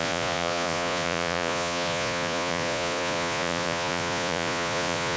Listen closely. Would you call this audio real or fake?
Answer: fake